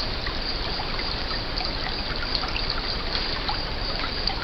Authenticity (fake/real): real